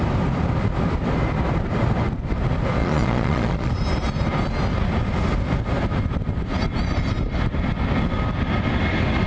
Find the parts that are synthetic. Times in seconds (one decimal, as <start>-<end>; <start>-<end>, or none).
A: 2.8-3.7